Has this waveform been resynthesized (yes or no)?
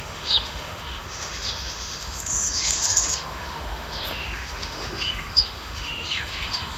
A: yes